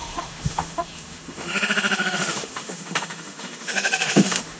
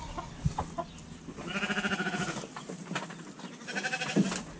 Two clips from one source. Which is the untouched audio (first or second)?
second